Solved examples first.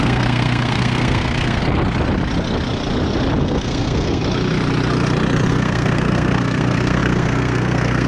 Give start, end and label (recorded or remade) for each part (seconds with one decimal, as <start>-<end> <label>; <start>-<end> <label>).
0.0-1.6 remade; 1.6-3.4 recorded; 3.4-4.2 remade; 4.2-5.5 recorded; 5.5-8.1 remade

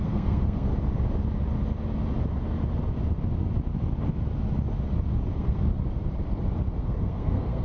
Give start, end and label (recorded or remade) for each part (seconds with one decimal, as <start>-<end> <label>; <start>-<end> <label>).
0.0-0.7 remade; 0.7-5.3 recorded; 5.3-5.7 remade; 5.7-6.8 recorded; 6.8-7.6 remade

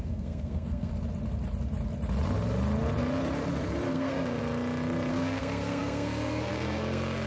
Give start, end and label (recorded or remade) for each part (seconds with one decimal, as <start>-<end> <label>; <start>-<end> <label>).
0.0-0.9 remade; 0.9-3.9 recorded; 3.9-4.4 remade; 4.4-5.1 recorded; 5.1-7.3 remade